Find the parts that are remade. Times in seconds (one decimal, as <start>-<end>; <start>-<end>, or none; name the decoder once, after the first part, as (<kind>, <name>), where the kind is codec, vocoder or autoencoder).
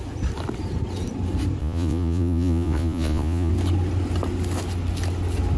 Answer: 1.6-3.5 (vocoder, Vocos)